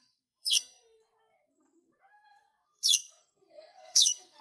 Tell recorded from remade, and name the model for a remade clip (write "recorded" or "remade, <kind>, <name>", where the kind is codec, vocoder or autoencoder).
remade, codec, SNAC